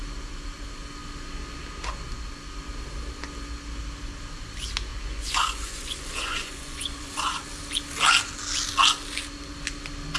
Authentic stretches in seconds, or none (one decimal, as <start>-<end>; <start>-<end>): 0.0-4.9; 7.4-10.2